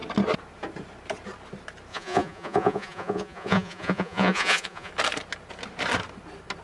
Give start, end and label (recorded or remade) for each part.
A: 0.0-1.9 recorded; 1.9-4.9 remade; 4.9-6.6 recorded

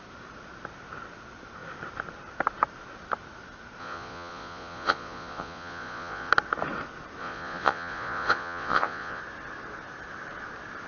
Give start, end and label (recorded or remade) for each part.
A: 0.0-3.8 recorded; 3.8-6.3 remade; 6.3-7.2 recorded; 7.2-9.2 remade; 9.2-10.9 recorded

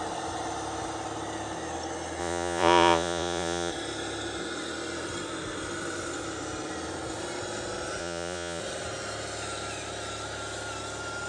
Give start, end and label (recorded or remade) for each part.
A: 0.0-2.2 recorded; 2.2-3.7 remade; 3.7-8.0 recorded; 8.0-8.6 remade; 8.6-11.3 recorded